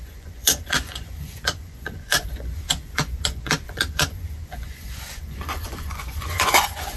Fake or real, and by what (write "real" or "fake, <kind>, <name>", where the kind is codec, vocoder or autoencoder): fake, vocoder, Vocos